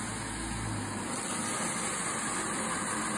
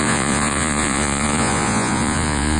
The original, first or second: first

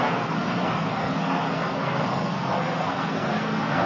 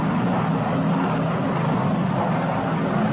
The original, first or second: second